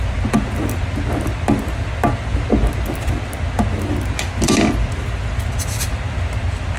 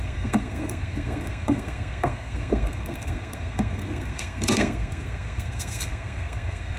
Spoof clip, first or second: second